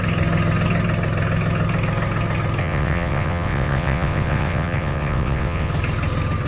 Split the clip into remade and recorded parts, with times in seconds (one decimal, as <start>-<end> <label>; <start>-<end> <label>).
0.0-2.6 recorded; 2.6-5.7 remade; 5.7-6.5 recorded